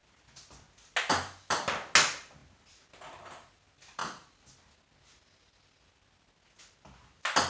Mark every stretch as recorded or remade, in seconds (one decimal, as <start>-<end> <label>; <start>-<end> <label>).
0.0-7.5 recorded